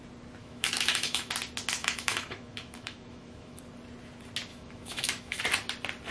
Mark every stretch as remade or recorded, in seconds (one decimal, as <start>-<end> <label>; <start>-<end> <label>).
0.0-0.4 recorded; 0.4-1.3 remade; 1.3-1.8 recorded; 1.8-3.6 remade; 3.6-4.5 recorded; 4.5-5.4 remade; 5.4-6.1 recorded